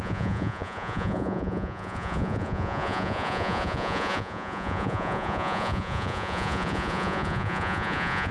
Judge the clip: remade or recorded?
remade